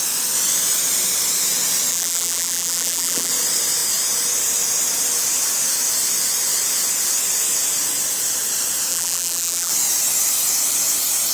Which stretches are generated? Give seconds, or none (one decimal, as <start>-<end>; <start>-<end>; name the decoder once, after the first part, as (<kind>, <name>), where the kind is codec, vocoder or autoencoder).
1.9-3.3 (vocoder, BigVGAN v2); 8.9-9.7